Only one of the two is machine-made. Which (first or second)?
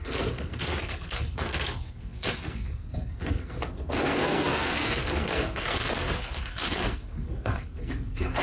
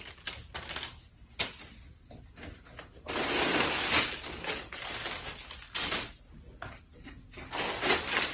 first